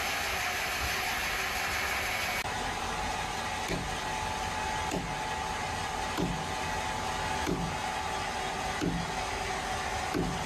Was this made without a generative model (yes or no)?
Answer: yes